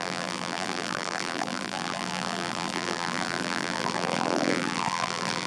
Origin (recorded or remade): remade